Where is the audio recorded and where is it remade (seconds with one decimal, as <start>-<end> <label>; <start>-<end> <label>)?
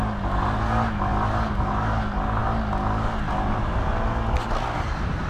0.0-5.3 recorded